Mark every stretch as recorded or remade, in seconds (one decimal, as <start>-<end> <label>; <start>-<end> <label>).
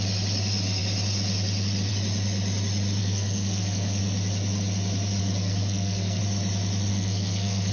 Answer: 0.0-3.0 recorded; 3.0-4.0 remade; 4.0-5.2 recorded; 5.2-6.2 remade; 6.2-6.9 recorded; 6.9-7.7 remade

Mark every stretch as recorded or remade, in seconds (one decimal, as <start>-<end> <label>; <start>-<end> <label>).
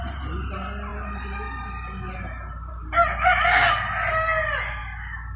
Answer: 0.0-5.4 recorded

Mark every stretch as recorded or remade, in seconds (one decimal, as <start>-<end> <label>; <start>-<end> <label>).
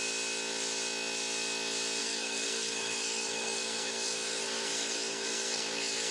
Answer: 0.0-2.0 recorded; 2.0-6.1 remade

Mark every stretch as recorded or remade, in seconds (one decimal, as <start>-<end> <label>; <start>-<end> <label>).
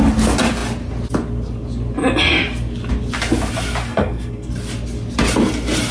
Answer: 0.0-3.9 recorded; 3.9-4.5 remade; 4.5-5.9 recorded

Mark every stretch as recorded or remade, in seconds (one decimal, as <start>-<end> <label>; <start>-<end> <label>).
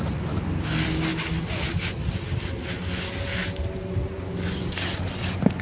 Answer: 0.0-5.6 recorded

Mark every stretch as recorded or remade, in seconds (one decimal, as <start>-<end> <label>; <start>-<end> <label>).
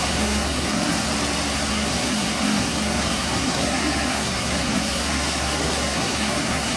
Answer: 0.0-1.1 remade; 1.1-1.7 recorded; 1.7-6.8 remade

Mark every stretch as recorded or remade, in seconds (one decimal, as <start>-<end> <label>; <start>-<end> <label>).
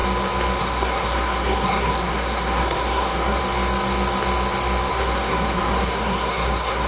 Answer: 0.0-0.6 recorded; 0.6-3.4 remade; 3.4-4.9 recorded; 4.9-6.9 remade